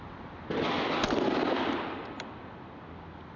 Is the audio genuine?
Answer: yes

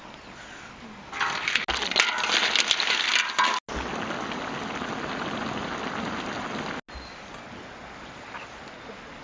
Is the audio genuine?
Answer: yes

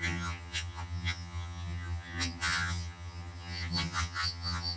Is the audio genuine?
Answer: no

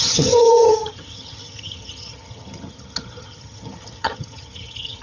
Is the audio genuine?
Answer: no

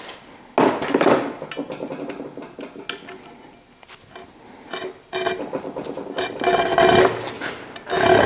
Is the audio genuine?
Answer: yes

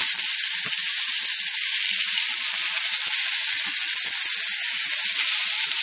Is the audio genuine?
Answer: yes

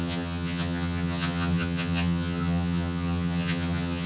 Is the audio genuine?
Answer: no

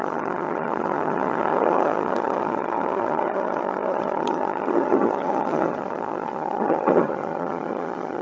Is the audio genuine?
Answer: no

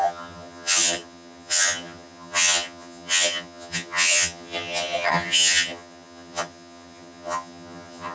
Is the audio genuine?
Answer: no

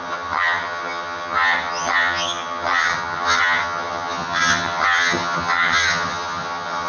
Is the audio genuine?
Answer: no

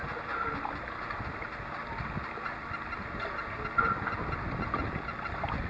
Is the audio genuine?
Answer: yes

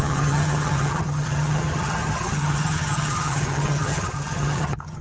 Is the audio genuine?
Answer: no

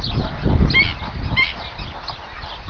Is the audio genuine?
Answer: yes